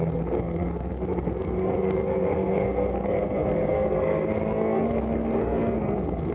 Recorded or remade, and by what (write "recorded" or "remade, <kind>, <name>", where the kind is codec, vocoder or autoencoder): remade, codec, SNAC